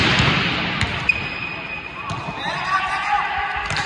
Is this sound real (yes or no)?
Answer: yes